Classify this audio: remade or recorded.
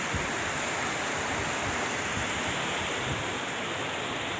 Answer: recorded